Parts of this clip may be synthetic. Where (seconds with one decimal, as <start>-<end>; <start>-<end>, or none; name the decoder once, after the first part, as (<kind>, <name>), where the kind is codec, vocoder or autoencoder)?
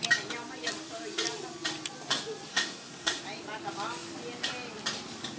2.5-3.2 (codec, SNAC)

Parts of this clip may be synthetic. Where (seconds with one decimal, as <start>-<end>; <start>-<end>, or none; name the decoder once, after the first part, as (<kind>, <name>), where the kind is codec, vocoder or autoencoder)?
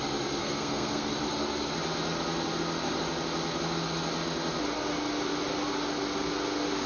0.4-1.1 (codec, SNAC)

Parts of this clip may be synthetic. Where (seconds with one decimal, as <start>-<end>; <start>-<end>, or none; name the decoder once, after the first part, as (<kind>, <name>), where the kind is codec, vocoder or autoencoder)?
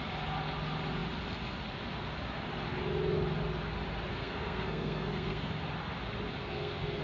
4.1-5.5 (codec, SNAC); 6.4-7.0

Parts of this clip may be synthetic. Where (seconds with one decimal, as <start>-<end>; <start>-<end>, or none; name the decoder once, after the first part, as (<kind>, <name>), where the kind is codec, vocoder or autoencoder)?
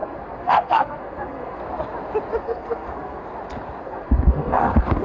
0.0-1.6 (codec, SNAC); 2.4-3.2; 3.8-5.0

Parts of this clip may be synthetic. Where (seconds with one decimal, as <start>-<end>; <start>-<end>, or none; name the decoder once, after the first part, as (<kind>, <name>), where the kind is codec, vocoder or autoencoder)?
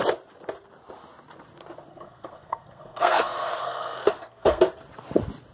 1.9-4.6 (codec, SNAC)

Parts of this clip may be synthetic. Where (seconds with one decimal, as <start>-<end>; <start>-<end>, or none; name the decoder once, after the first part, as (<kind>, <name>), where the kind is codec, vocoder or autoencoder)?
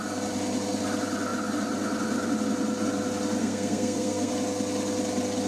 3.4-4.3 (codec, SNAC)